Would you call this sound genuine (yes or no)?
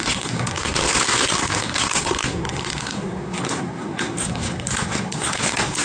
no